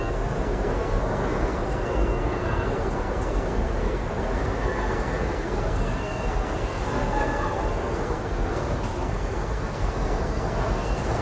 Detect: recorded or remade remade